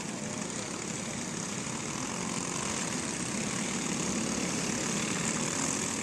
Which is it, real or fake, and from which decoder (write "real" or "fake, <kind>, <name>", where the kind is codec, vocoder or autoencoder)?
real